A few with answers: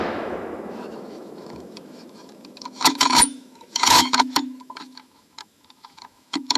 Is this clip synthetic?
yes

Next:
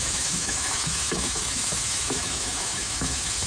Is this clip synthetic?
yes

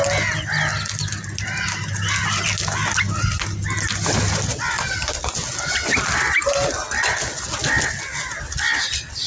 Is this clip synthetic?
no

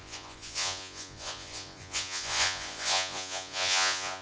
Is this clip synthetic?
yes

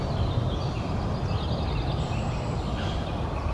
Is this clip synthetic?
no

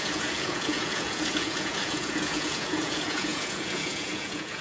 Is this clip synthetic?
yes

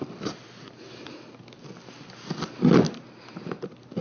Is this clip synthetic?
no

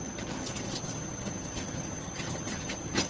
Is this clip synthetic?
yes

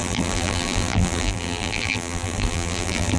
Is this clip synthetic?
yes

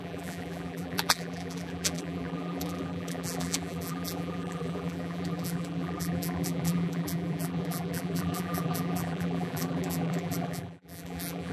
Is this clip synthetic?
yes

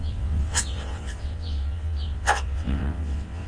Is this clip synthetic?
yes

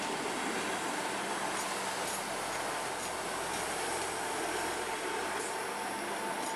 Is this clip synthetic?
no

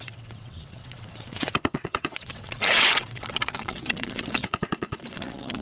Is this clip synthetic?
yes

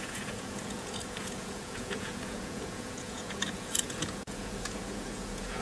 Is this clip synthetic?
yes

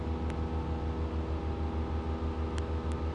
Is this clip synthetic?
no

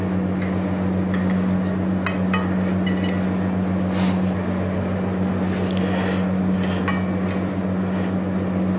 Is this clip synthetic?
no